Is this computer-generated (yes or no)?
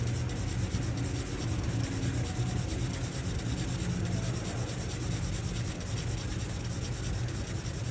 no